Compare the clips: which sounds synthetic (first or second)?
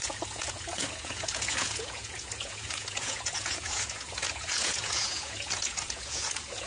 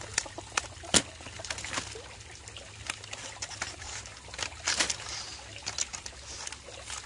first